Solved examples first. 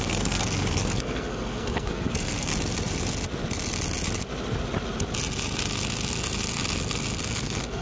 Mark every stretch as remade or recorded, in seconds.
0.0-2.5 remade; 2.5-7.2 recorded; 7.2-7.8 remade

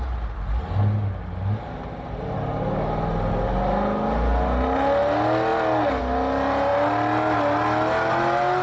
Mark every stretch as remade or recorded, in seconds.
0.0-8.6 recorded

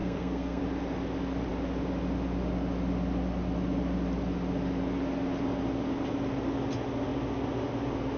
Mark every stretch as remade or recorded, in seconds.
0.0-0.6 remade; 0.6-8.2 recorded

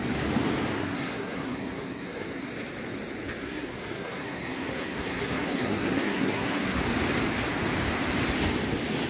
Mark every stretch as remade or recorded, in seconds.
0.0-0.8 recorded; 0.8-2.5 remade; 2.5-3.4 recorded; 3.4-6.8 remade; 6.8-9.1 recorded

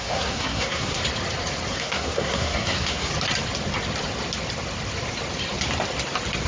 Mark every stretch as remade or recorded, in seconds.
0.0-1.0 remade; 1.0-1.7 recorded; 1.7-3.1 remade; 3.1-6.5 recorded

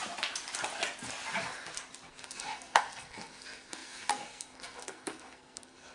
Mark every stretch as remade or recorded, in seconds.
0.0-2.1 recorded; 2.1-5.9 remade

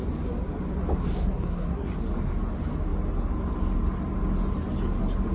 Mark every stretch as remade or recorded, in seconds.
0.0-1.0 recorded; 1.0-1.9 remade; 1.9-5.3 recorded

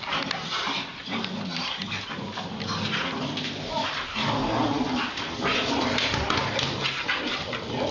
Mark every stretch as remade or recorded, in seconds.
0.0-7.9 recorded